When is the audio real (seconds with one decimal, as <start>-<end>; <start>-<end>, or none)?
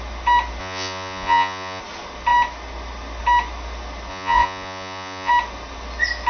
0.0-0.6; 1.8-4.1; 5.3-6.3